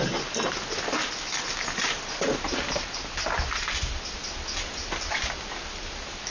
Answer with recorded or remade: recorded